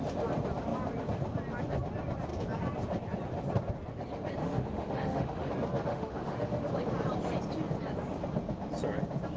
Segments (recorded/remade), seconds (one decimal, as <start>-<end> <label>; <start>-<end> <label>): 0.0-4.4 recorded; 4.4-5.5 remade; 5.5-5.9 recorded; 5.9-6.7 remade; 6.7-9.4 recorded

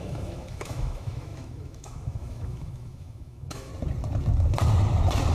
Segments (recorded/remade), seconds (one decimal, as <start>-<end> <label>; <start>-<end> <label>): 0.0-3.7 remade; 3.7-5.3 recorded

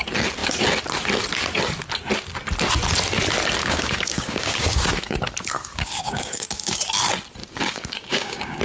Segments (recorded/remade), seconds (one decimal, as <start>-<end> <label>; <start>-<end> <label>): 0.0-3.6 recorded; 3.6-6.9 remade; 6.9-7.4 recorded; 7.4-8.6 remade

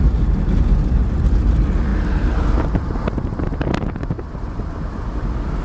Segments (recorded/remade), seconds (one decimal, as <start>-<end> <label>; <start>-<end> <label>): 0.0-5.6 recorded

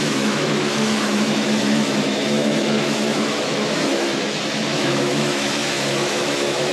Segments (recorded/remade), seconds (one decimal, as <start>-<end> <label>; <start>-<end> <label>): 0.0-6.7 remade

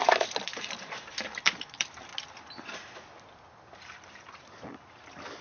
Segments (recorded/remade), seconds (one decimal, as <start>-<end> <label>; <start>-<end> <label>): 0.0-2.1 remade; 2.1-5.4 recorded